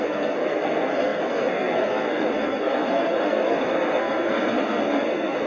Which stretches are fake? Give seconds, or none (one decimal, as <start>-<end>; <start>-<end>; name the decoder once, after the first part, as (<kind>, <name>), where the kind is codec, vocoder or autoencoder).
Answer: 0.0-5.5 (codec, SNAC)